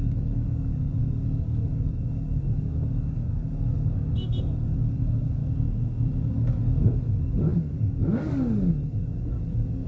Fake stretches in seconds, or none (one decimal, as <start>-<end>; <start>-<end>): 0.0-5.4; 6.3-9.9

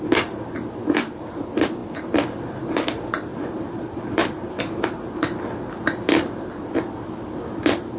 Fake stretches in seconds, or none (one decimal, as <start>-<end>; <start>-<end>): 3.3-4.6

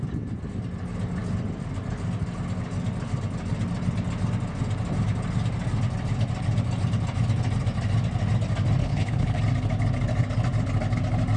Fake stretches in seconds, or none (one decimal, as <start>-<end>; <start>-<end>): 8.8-9.4